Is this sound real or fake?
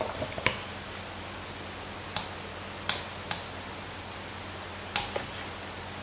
real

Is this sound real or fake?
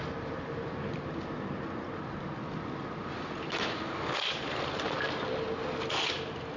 real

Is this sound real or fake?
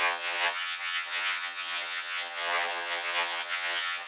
fake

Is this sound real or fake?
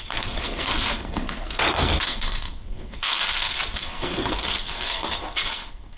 fake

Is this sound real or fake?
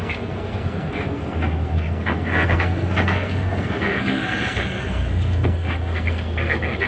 fake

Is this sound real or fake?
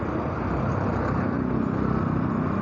real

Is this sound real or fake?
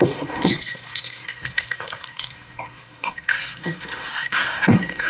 fake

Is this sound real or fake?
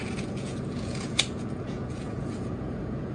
fake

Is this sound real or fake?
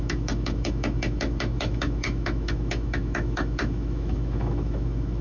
fake